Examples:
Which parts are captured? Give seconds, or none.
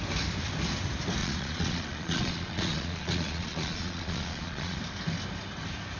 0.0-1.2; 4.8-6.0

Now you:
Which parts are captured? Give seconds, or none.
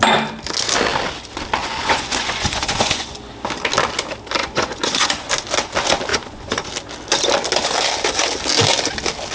0.0-1.6; 3.3-4.4; 5.3-6.1; 6.7-9.3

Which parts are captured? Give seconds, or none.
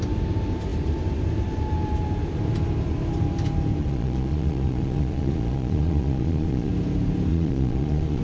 0.0-3.8; 6.7-7.3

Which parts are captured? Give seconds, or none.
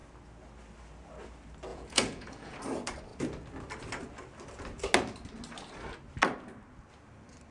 0.0-1.7; 2.6-7.5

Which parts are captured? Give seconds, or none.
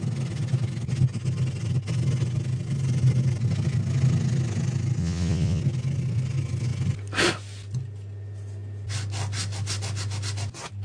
0.0-5.0; 5.6-10.8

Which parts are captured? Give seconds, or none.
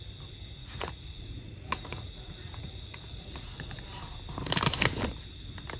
0.0-0.6; 3.8-5.8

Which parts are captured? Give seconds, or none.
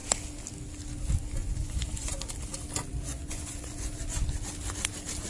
0.0-1.4; 2.1-3.1; 3.9-5.3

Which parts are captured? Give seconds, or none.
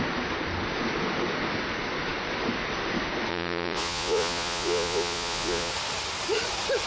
0.0-3.3; 5.7-6.9